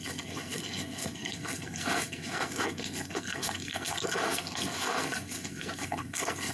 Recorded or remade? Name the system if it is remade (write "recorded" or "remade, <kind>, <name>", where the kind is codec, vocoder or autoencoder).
remade, codec, SNAC